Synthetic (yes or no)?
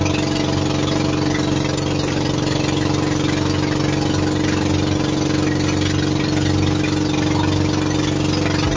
no